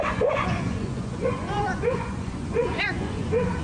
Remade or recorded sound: remade